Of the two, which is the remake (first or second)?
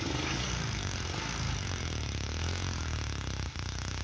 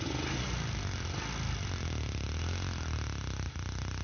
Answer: first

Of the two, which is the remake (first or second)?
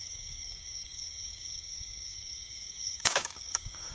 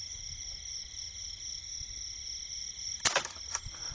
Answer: first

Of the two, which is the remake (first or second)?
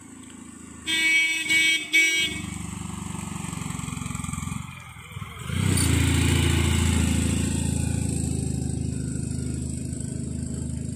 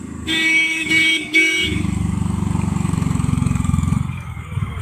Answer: second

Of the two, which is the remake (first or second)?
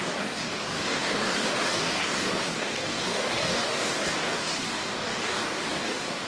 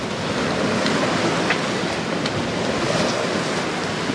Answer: first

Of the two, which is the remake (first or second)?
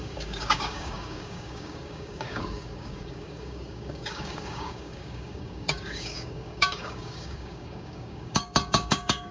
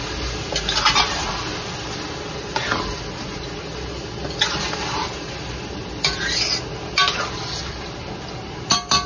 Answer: first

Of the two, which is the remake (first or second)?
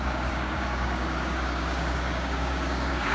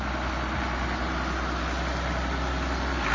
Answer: first